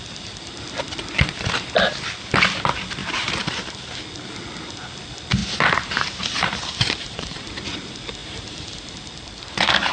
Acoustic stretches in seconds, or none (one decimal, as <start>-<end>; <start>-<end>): 0.0-3.0; 3.5-5.4; 7.7-8.2; 8.9-9.9